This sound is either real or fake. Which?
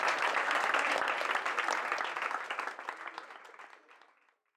real